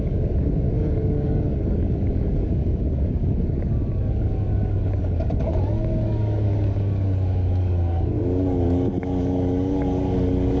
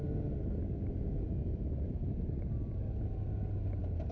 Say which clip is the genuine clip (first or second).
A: second